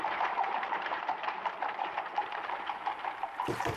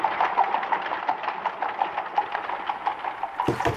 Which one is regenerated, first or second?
first